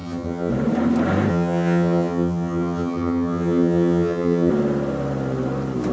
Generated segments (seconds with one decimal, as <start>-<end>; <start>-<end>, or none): 0.0-0.5; 1.3-4.5